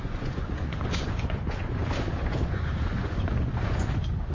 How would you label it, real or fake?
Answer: fake